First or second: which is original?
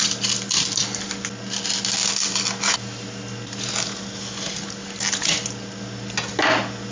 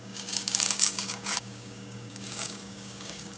first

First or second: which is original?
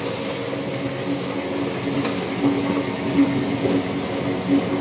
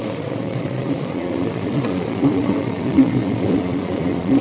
first